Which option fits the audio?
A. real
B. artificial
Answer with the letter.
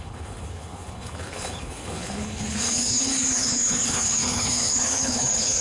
B